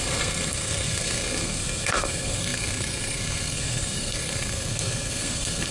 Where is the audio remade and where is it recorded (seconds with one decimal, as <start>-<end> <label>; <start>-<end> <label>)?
0.0-5.7 remade